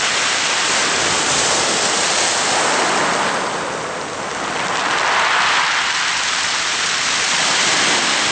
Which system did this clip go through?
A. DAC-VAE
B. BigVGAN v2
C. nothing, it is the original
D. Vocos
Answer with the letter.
C